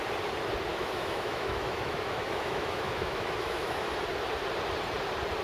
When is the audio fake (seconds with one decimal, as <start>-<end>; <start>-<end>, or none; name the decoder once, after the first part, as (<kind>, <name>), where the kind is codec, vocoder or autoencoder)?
0.7-3.9 (autoencoder, DAC-VAE)